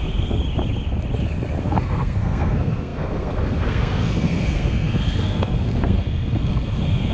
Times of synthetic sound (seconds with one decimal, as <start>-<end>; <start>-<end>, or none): 0.0-0.4; 1.6-7.1

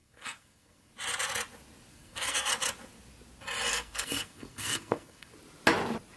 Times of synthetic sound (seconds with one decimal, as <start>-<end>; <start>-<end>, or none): 0.0-0.9; 1.9-2.5; 3.7-5.3

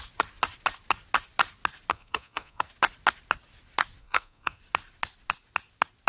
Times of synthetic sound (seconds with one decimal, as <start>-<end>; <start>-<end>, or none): 1.9-2.7; 4.0-4.6

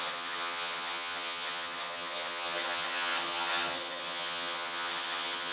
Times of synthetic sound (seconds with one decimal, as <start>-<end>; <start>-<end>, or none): 0.0-5.5

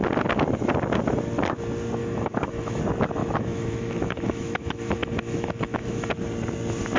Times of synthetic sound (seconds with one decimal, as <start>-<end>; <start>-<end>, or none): 2.0-2.8; 3.2-6.1

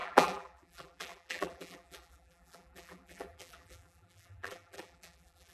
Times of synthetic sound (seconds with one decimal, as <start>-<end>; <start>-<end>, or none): 0.0-5.5